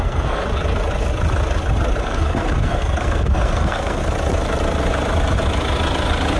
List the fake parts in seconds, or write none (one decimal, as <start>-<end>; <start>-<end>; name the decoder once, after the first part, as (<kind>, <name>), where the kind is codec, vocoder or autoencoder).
0.0-0.4 (codec, SNAC); 2.0-4.0